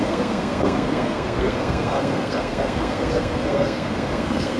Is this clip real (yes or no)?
no